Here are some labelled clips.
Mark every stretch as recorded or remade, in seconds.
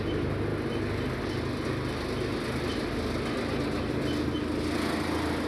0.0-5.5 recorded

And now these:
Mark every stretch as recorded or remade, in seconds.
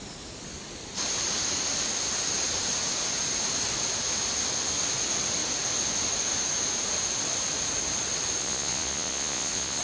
0.0-8.4 recorded; 8.4-9.8 remade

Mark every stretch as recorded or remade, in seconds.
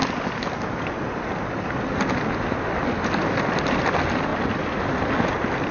0.0-5.7 recorded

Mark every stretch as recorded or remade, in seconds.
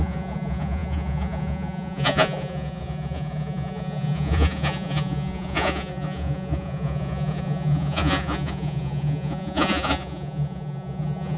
0.0-11.4 remade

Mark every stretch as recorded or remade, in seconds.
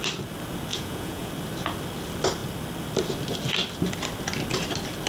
0.0-0.7 recorded; 0.7-1.3 remade; 1.3-5.1 recorded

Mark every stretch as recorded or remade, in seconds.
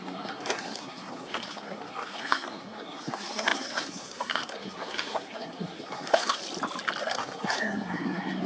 0.0-6.4 remade; 6.4-7.0 recorded; 7.0-8.5 remade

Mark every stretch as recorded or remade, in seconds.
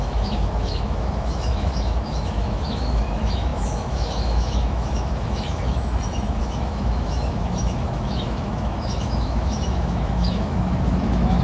0.0-11.4 remade